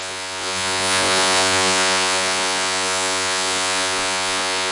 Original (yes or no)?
no